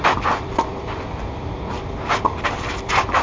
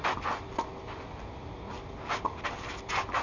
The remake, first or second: first